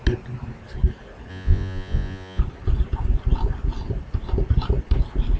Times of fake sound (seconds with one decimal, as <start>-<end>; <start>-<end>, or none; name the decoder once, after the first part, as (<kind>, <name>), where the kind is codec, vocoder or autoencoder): 1.3-2.4 (vocoder, Vocos)